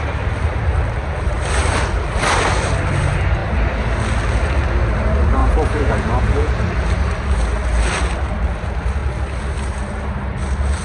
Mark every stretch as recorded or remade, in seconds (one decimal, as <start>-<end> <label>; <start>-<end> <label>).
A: 0.0-5.4 recorded; 5.4-6.5 remade; 6.5-10.8 recorded